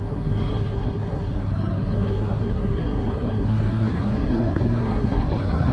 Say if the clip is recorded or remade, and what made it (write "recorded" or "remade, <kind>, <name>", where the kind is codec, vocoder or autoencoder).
remade, codec, SNAC